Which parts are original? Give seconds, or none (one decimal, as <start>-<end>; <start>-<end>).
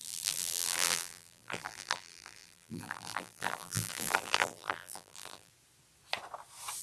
5.5-6.8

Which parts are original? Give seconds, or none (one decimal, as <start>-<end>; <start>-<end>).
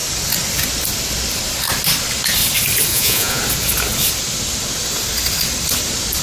0.0-2.9; 3.4-6.2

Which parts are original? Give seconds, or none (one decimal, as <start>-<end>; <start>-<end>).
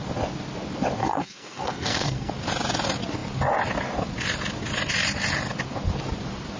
0.0-1.0; 2.3-6.6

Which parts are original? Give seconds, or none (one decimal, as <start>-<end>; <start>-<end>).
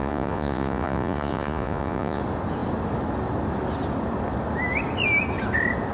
2.2-5.9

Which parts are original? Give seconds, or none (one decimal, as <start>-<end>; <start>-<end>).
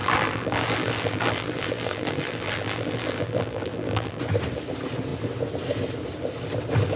4.2-7.0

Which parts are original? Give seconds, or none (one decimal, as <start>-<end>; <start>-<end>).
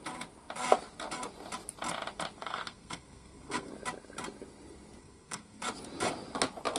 0.0-2.4; 3.7-5.0; 5.6-6.8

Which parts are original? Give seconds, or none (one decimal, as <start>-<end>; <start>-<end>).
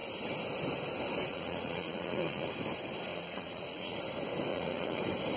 0.0-1.3; 2.5-3.1; 4.0-4.5; 5.0-5.4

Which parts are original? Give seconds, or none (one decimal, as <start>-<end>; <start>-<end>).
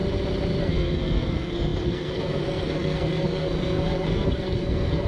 0.0-0.6